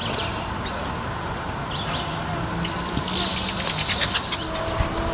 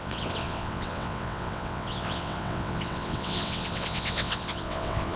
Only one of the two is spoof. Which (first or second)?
second